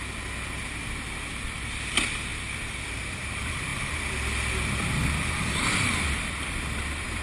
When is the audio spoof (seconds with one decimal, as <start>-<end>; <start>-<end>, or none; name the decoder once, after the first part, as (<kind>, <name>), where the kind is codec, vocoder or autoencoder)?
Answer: 0.0-7.2 (vocoder, BigVGAN v2)